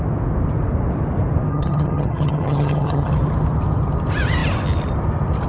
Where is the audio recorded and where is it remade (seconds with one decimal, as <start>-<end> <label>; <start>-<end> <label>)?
0.0-1.5 recorded; 1.5-3.1 remade; 3.1-5.5 recorded